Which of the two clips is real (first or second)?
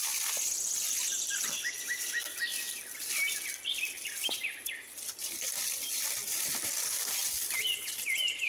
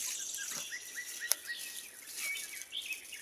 second